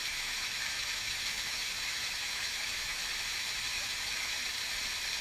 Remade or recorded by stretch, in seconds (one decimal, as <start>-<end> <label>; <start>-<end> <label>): 0.0-3.1 remade; 3.1-3.7 recorded; 3.7-4.4 remade; 4.4-5.2 recorded